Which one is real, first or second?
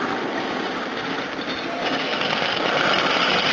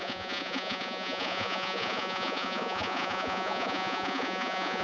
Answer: first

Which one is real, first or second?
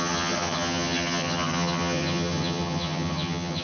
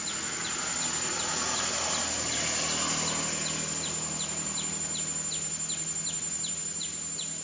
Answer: second